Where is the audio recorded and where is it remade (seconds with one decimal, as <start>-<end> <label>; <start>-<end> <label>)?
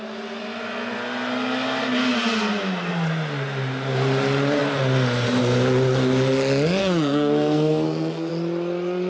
0.0-6.8 recorded; 6.8-8.3 remade; 8.3-9.1 recorded